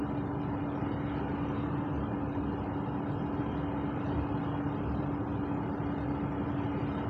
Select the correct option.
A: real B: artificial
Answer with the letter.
A